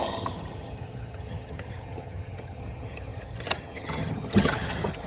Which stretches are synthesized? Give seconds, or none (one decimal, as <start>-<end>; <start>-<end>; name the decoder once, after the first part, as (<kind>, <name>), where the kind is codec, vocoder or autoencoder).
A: 0.0-5.1 (vocoder, HiFi-GAN)